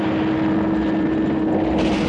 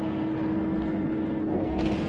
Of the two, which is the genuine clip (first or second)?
first